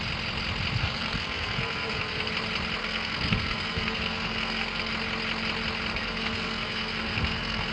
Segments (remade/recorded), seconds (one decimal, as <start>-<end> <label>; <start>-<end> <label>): 0.0-0.8 recorded; 0.8-2.3 remade; 2.3-2.8 recorded; 2.8-4.9 remade; 4.9-5.9 recorded; 5.9-7.7 remade